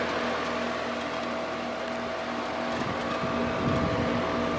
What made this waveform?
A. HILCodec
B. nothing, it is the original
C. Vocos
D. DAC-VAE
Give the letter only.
B